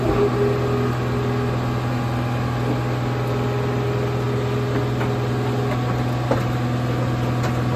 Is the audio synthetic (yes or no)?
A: no